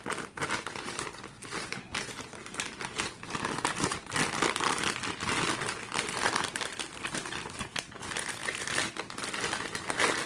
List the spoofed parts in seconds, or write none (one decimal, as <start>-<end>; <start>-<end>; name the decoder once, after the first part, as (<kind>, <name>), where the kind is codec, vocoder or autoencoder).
none